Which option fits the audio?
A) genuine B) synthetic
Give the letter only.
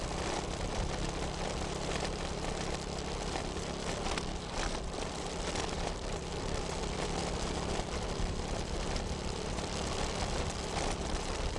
B